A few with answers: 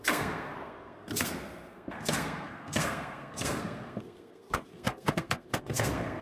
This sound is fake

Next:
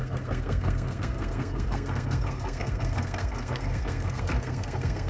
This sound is fake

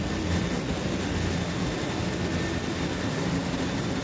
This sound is real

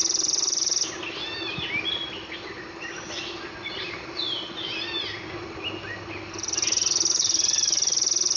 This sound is real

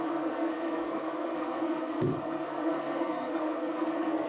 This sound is fake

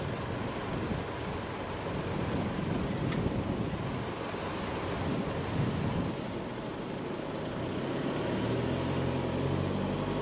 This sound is real